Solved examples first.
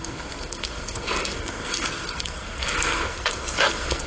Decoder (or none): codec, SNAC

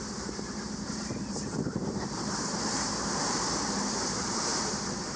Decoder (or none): vocoder, BigVGAN v2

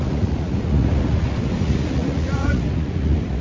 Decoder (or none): vocoder, Vocos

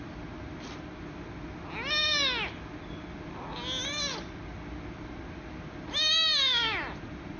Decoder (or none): none